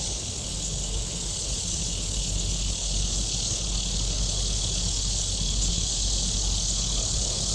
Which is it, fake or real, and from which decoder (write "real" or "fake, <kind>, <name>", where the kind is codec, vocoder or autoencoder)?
fake, codec, HILCodec